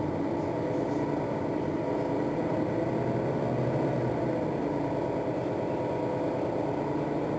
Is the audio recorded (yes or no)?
yes